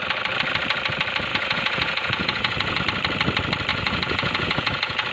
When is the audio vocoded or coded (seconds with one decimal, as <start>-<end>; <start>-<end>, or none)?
1.3-2.8; 3.7-5.1